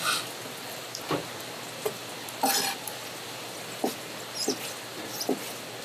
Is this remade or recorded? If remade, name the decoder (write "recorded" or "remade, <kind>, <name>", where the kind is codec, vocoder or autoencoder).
recorded